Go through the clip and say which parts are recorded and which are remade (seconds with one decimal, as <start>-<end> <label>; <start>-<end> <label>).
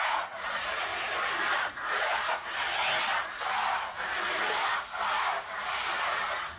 0.0-0.9 remade; 0.9-1.5 recorded; 1.5-2.1 remade; 2.1-6.0 recorded; 6.0-6.6 remade